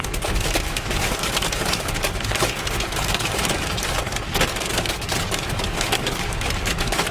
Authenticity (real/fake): fake